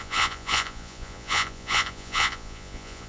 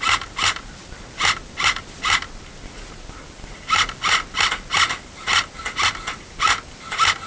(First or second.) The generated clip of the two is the first